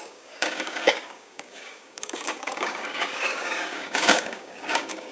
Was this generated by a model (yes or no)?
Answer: yes